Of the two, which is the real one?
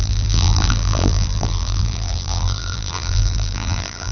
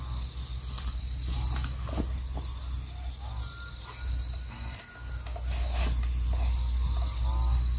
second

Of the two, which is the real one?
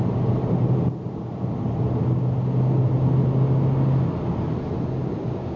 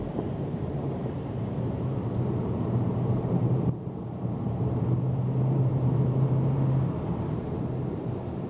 first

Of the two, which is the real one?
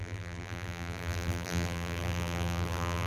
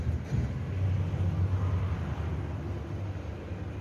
second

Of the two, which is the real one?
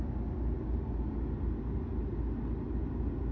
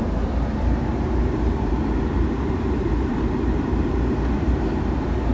first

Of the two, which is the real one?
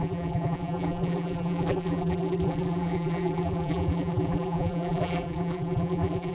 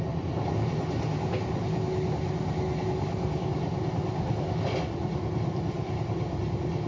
second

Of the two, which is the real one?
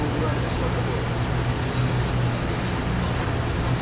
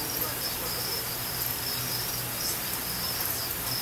first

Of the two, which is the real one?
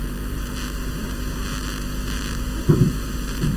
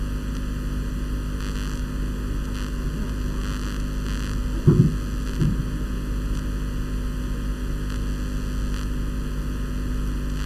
second